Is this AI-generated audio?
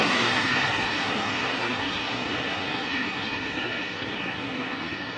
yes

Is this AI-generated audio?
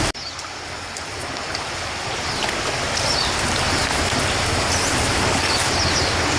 no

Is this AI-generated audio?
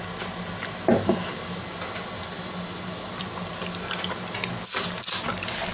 no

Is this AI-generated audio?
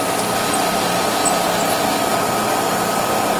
no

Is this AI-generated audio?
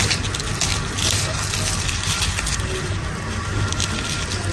no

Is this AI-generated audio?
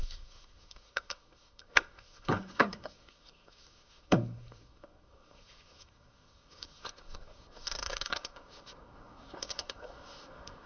yes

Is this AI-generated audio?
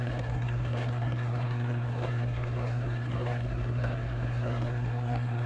yes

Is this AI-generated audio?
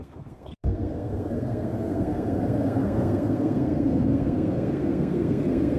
yes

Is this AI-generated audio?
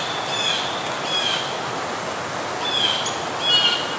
no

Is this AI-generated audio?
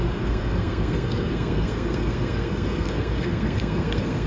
yes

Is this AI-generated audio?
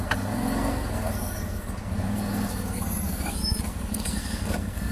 yes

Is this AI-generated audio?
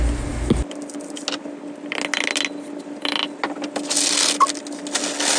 no